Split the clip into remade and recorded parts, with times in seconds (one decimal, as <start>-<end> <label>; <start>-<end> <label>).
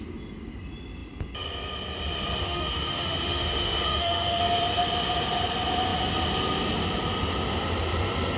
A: 0.0-2.4 recorded; 2.4-4.4 remade; 4.4-8.4 recorded